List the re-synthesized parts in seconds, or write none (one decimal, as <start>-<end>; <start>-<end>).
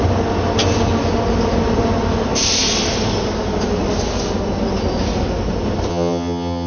5.9-6.7